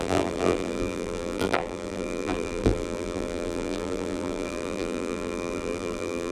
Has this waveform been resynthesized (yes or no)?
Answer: yes